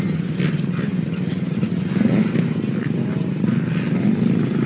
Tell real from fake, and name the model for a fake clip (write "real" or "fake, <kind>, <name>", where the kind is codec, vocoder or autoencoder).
real